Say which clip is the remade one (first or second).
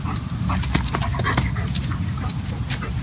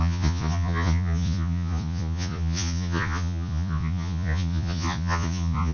second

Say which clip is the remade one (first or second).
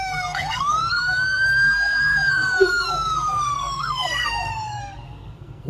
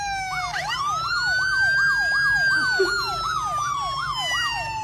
first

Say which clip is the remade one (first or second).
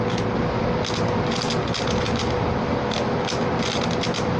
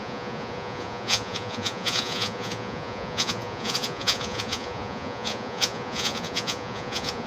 second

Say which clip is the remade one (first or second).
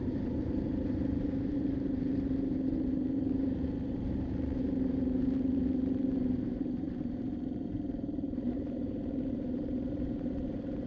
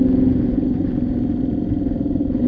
first